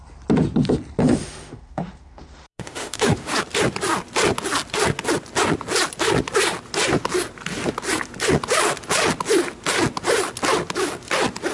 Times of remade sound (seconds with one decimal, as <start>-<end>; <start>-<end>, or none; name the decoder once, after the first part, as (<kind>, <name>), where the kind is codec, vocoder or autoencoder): 1.0-3.3 (autoencoder, DAC-VAE)